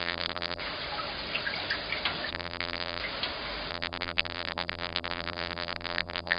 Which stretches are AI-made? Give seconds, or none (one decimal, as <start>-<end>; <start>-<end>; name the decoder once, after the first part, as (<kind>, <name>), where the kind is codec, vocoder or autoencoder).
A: 0.0-0.6 (vocoder, BigVGAN v2); 2.3-3.0; 3.7-6.4